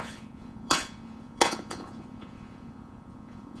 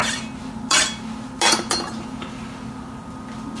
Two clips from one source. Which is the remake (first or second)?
first